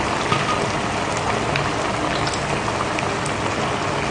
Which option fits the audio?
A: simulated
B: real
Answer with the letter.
B